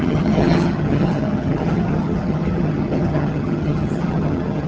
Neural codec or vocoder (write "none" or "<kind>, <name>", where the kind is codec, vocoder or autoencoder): vocoder, HiFi-GAN